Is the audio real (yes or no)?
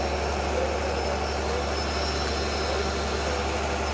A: no